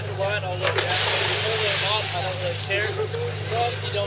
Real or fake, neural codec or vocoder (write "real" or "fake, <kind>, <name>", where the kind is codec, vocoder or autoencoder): real